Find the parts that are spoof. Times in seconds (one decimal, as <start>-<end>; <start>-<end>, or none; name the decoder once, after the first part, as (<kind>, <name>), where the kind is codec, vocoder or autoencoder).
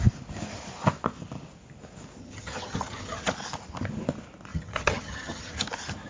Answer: 2.2-3.2 (vocoder, HiFi-GAN); 4.5-5.6